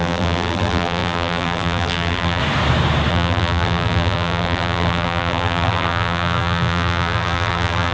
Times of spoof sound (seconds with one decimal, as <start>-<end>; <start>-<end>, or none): 0.0-2.4; 3.1-7.9